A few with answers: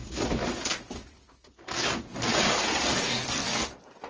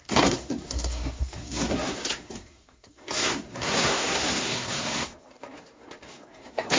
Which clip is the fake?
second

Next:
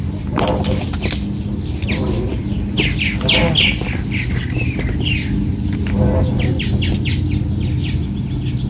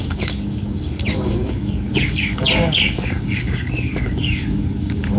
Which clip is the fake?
second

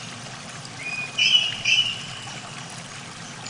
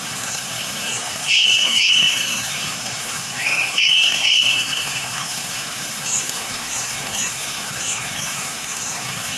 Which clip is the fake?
second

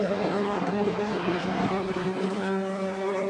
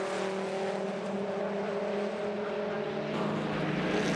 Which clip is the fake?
first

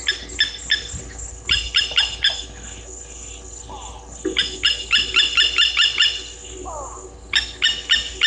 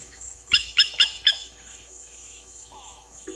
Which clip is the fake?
second